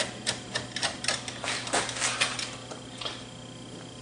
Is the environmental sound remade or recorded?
recorded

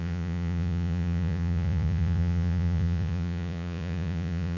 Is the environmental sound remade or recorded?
remade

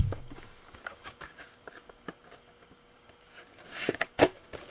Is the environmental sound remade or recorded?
remade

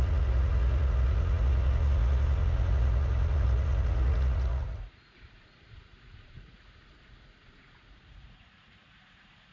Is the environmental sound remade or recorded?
remade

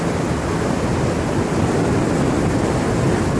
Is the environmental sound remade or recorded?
recorded